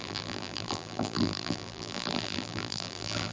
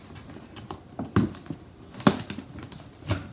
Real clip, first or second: second